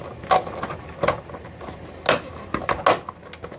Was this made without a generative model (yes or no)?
yes